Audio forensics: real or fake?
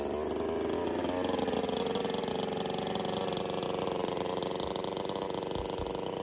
real